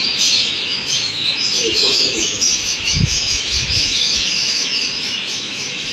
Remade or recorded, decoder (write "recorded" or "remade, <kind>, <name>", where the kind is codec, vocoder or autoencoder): remade, autoencoder, DAC-VAE